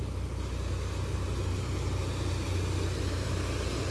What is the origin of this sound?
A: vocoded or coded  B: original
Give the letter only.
B